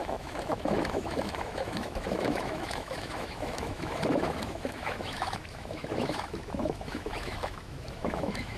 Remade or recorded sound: remade